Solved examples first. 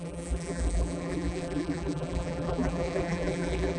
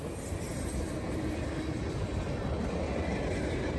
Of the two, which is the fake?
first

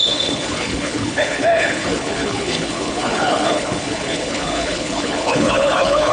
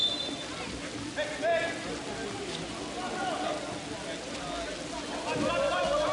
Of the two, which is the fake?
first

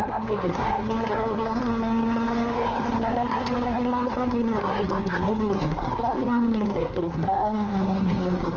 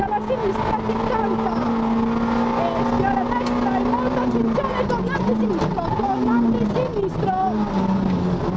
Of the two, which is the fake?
first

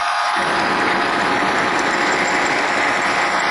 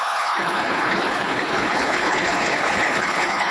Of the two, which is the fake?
second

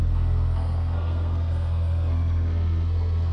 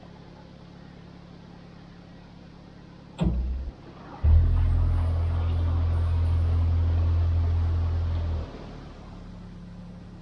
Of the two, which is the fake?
first